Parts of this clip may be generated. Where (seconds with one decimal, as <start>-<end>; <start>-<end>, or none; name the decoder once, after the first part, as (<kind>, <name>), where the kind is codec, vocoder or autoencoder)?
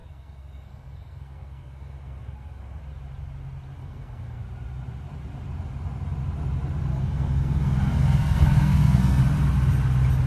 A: 0.0-2.8 (codec, SNAC); 3.8-4.4; 6.9-9.2